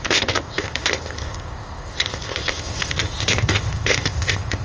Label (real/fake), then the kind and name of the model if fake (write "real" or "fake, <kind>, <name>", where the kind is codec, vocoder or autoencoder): fake, codec, ZipCodec